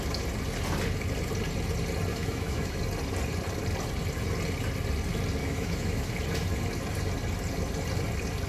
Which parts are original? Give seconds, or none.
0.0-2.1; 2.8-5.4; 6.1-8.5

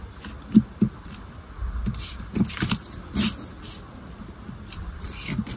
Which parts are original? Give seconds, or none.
0.0-5.6

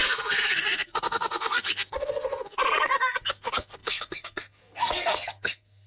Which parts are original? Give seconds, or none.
none

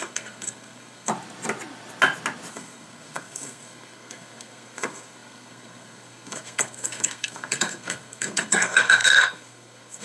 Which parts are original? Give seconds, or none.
1.1-2.5